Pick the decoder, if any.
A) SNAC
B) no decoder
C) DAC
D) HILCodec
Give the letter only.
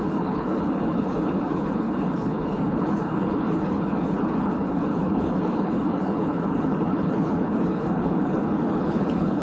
D